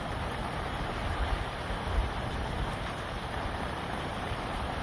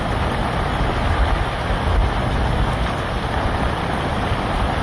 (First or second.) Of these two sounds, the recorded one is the second